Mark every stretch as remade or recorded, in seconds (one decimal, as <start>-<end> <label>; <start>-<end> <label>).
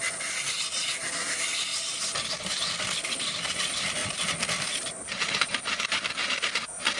0.0-7.0 recorded